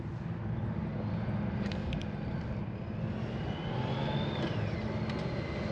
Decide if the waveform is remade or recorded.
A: recorded